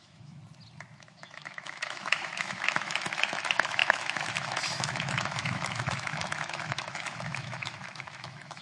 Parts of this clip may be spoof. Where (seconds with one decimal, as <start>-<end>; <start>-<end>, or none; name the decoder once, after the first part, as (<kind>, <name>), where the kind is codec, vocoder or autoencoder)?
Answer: 0.0-0.4 (autoencoder, DAC-VAE); 1.0-8.6

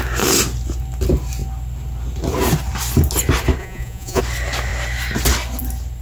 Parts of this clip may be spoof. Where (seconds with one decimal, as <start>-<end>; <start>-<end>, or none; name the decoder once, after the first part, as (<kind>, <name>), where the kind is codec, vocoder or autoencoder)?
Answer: 3.6-4.2 (vocoder, Vocos)

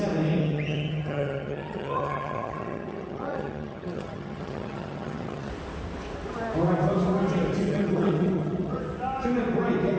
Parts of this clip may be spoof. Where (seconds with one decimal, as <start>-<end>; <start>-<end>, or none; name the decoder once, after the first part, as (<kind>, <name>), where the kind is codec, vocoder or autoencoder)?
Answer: 0.4-5.5 (vocoder, HiFi-GAN); 7.6-8.8

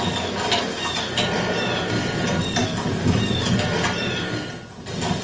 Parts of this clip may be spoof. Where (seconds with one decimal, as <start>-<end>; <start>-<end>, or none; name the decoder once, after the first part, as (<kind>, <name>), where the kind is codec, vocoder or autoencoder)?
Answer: none

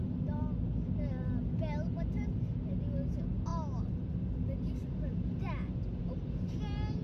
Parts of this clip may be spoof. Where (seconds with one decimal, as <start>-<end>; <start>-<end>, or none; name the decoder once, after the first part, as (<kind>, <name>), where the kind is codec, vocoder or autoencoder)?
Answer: 6.0-7.0 (vocoder, BigVGAN v2)

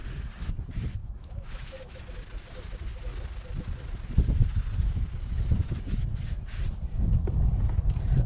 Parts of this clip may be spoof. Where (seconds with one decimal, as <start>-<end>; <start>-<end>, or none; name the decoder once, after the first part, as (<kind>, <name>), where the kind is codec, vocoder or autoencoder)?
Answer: 1.0-2.0 (autoencoder, DAC-VAE)

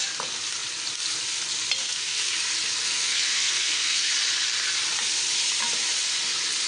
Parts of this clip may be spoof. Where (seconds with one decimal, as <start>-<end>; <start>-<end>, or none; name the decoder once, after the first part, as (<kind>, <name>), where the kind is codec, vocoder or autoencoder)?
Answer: 1.8-2.3 (codec, SNAC); 2.8-4.1